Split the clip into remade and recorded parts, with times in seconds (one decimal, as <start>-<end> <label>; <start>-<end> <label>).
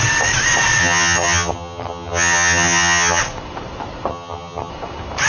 0.0-0.8 recorded; 0.8-3.2 remade; 3.2-4.1 recorded; 4.1-4.7 remade; 4.7-5.3 recorded